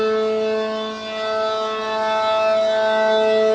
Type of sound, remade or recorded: recorded